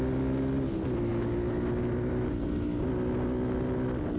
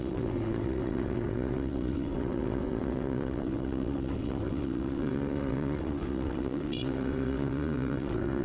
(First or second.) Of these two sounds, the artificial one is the second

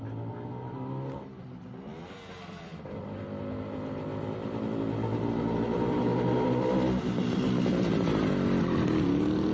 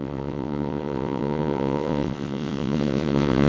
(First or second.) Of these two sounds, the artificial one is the second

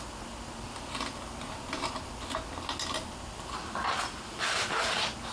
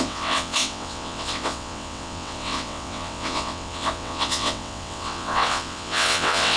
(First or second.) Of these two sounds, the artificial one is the second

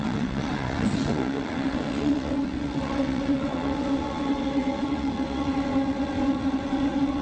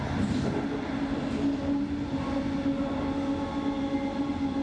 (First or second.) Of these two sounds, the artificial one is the first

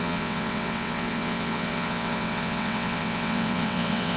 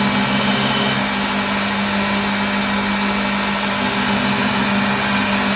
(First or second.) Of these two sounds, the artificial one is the first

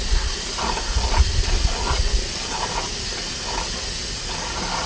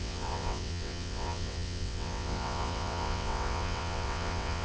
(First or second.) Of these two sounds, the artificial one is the second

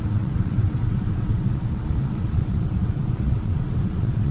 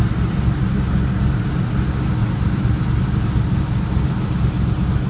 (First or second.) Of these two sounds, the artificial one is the first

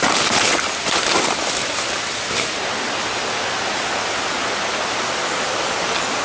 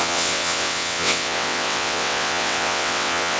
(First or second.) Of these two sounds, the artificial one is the second